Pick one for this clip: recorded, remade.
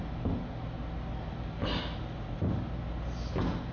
recorded